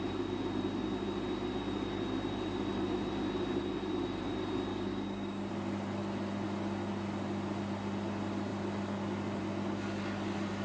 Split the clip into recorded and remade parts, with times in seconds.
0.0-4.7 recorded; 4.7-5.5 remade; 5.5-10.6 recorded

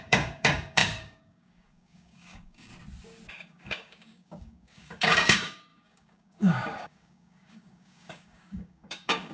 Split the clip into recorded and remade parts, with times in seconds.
0.0-2.7 remade; 2.7-3.3 recorded; 3.3-9.3 remade

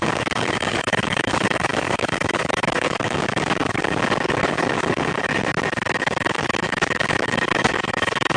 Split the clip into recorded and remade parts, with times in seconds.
0.0-5.3 remade; 5.3-6.0 recorded; 6.0-8.4 remade

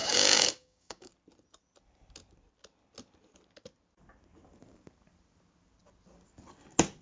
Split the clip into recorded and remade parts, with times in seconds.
0.0-1.1 remade; 1.1-7.0 recorded

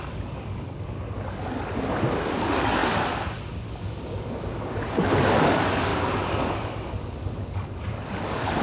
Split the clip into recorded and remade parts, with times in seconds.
0.0-2.8 remade; 2.8-3.7 recorded; 3.7-8.6 remade

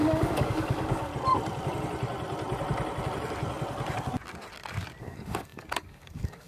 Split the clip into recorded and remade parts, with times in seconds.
0.0-1.1 remade; 1.1-5.0 recorded; 5.0-6.5 remade

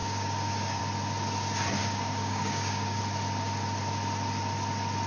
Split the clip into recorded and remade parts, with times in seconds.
0.0-0.8 remade; 0.8-1.8 recorded; 1.8-3.0 remade; 3.0-5.1 recorded